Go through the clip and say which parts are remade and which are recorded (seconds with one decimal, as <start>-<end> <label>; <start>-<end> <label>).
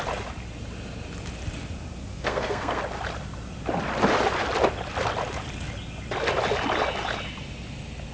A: 0.0-2.1 recorded; 2.1-2.8 remade; 2.8-8.1 recorded